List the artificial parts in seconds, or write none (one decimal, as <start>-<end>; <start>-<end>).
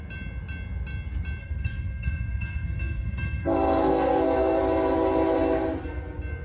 1.4-4.6